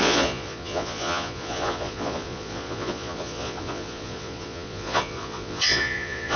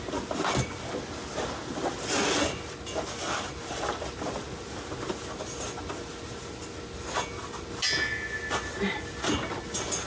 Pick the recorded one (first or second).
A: second